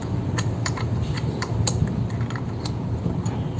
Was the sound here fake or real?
fake